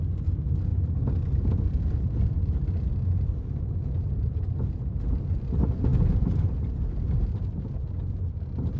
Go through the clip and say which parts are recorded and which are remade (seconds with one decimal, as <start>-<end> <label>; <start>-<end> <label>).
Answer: 0.0-8.8 recorded